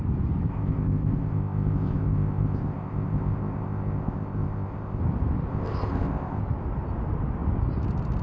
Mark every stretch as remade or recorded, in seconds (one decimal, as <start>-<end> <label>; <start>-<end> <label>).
0.0-0.5 recorded; 0.5-5.0 remade; 5.0-5.5 recorded; 5.5-6.4 remade; 6.4-8.2 recorded